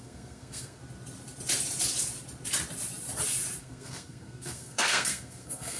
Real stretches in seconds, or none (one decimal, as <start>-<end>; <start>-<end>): 0.8-3.6